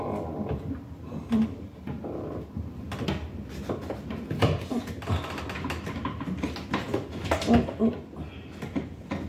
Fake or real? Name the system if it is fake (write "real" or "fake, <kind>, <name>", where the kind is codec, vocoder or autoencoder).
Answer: real